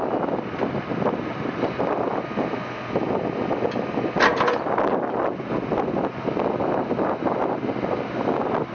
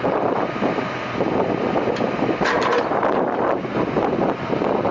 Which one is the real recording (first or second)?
first